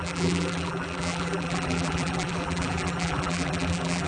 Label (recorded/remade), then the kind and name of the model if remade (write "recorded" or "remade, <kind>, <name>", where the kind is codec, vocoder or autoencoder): remade, vocoder, BigVGAN v2